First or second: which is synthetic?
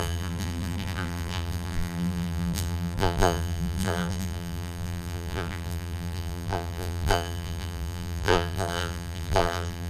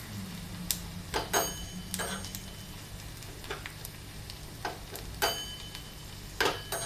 first